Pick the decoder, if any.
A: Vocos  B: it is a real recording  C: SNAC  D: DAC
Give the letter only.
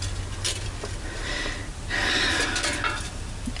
B